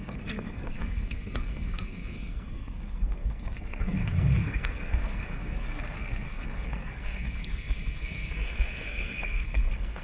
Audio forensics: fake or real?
fake